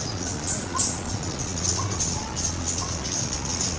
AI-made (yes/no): yes